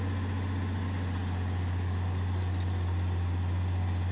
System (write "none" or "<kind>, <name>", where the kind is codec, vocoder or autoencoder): none